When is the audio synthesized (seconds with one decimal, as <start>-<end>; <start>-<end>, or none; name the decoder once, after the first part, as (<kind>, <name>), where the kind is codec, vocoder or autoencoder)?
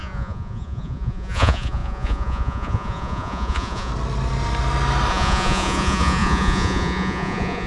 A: 0.0-3.9 (vocoder, Vocos); 5.1-7.7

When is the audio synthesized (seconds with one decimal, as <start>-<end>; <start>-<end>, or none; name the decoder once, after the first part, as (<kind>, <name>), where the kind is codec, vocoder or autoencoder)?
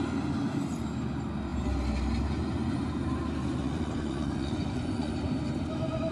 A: 3.6-5.1 (vocoder, Vocos)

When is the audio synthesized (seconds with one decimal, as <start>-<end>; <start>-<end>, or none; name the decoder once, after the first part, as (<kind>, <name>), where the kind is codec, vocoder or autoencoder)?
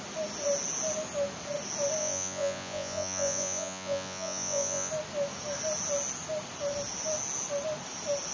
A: 2.0-4.9 (vocoder, Vocos)